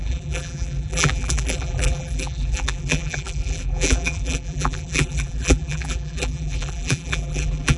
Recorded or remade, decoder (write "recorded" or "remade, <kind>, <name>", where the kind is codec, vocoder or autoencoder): remade, vocoder, BigVGAN v2